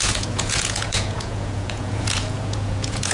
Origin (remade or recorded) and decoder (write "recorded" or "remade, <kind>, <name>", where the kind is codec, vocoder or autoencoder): remade, vocoder, Vocos